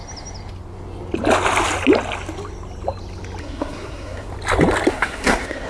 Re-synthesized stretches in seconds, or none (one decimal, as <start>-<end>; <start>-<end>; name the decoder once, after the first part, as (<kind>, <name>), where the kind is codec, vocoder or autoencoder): 3.4-4.3 (codec, SNAC); 4.9-5.7